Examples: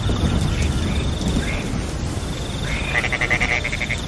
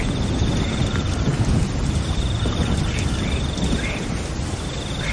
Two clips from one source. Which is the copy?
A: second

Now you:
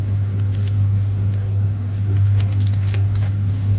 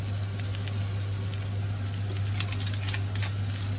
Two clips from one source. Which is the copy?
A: first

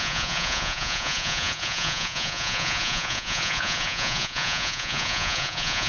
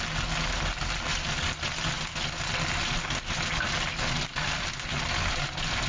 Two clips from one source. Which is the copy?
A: first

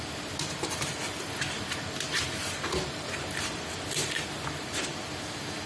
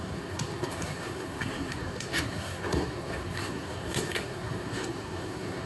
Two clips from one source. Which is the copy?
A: second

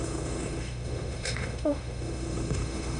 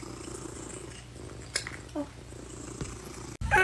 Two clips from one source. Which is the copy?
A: first